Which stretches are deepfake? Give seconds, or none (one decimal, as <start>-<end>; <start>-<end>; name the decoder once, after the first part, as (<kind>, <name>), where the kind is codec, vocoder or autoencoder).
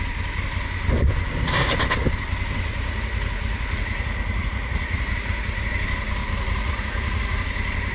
2.7-5.7 (vocoder, Vocos); 6.2-7.4